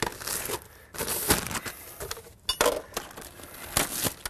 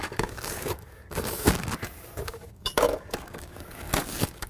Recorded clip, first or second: first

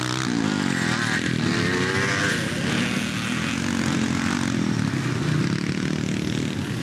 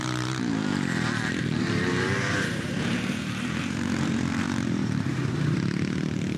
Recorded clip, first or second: first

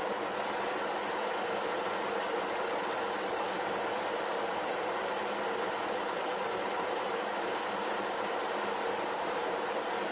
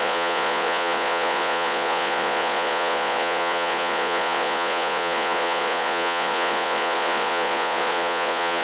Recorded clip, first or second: first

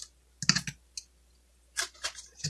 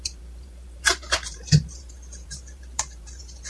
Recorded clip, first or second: first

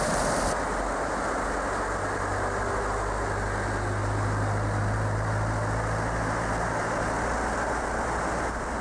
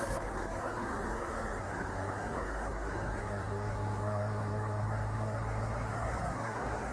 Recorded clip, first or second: first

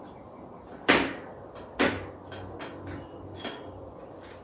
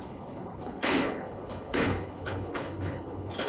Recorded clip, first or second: first